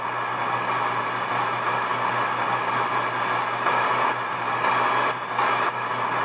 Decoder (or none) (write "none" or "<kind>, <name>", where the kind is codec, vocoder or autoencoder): none